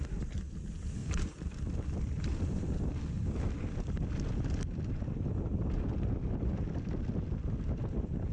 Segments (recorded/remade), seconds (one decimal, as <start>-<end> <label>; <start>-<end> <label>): 0.0-1.0 recorded; 1.0-3.4 remade; 3.4-8.3 recorded